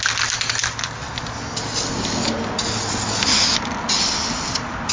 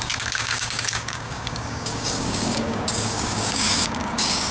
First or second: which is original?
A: first